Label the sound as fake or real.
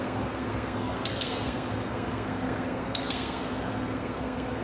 fake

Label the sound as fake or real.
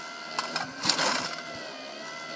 real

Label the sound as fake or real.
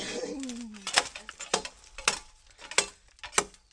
real